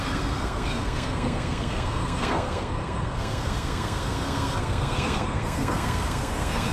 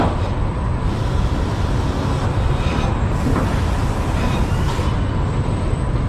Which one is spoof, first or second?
first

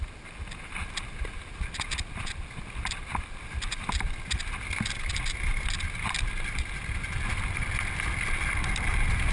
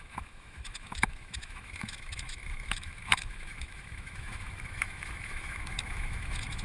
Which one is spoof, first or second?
second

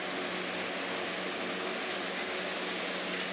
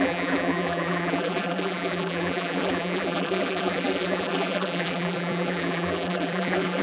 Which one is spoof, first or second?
second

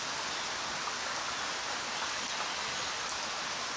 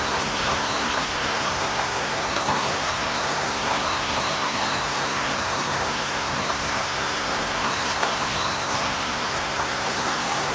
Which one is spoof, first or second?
second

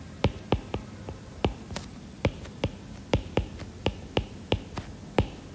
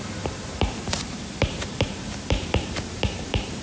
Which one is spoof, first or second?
second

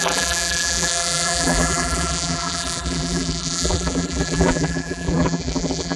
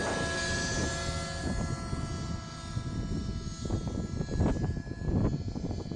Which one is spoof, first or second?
first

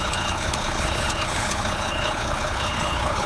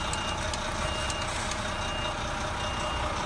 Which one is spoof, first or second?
first